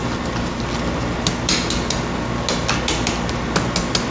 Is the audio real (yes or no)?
yes